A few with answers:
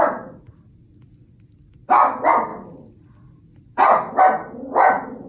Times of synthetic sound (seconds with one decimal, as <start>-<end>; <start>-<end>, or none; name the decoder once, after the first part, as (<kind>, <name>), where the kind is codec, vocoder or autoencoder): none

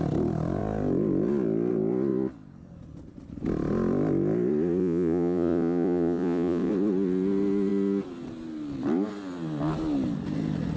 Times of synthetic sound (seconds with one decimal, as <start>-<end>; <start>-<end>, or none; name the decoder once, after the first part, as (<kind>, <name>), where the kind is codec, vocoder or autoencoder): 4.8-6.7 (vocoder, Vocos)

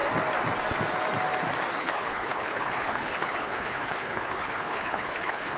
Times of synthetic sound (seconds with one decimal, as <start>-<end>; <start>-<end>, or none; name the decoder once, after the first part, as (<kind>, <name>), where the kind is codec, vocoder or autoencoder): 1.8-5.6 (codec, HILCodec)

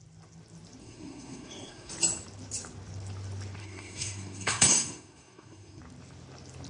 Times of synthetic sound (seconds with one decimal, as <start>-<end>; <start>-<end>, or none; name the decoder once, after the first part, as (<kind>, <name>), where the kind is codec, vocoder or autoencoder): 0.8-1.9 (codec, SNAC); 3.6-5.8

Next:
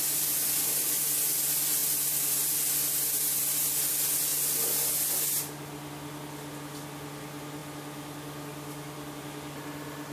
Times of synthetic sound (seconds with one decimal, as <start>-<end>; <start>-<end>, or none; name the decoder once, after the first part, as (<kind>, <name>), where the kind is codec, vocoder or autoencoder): none